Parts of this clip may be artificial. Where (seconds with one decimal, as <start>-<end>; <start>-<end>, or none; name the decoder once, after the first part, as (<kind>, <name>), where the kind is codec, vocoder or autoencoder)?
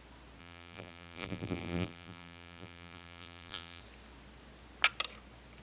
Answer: 0.4-3.8 (vocoder, BigVGAN v2)